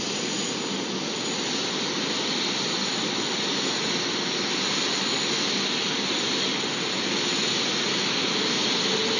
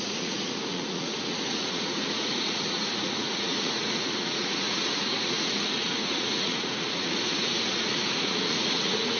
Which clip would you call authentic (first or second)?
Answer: first